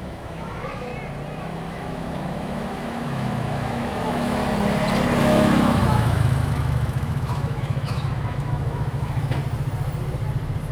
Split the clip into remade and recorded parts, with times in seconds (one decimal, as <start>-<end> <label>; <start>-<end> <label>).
0.0-0.9 remade; 0.9-1.4 recorded; 1.4-4.4 remade; 4.4-5.2 recorded; 5.2-9.4 remade; 9.4-10.7 recorded